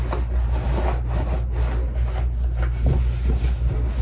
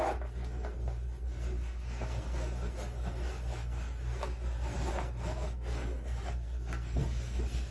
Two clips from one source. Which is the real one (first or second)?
first